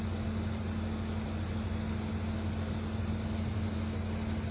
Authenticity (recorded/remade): recorded